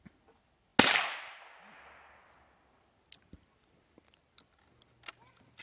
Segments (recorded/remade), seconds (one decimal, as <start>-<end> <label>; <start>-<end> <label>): 0.0-5.6 recorded

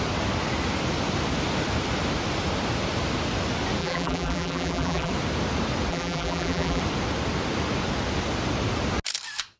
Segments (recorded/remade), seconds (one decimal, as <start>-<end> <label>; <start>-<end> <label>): 0.0-3.8 recorded; 3.8-5.1 remade; 5.1-5.9 recorded; 5.9-6.8 remade; 6.8-9.6 recorded

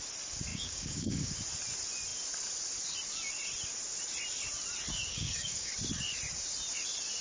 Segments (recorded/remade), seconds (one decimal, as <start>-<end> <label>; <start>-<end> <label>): 0.0-0.5 recorded; 0.5-1.3 remade; 1.3-5.1 recorded; 5.1-5.7 remade; 5.7-7.2 recorded

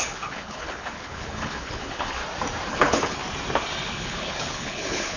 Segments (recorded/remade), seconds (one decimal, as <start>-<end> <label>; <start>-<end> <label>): 0.0-2.2 remade; 2.2-2.7 recorded; 2.7-3.2 remade; 3.2-3.9 recorded; 3.9-5.2 remade